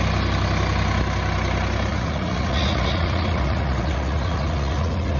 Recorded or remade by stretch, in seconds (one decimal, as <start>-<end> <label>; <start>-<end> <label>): 0.0-1.9 recorded; 1.9-5.2 remade